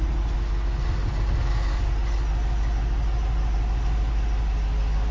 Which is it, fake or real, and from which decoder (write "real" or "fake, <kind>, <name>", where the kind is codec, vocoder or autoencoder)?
real